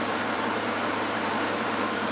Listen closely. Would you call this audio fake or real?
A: fake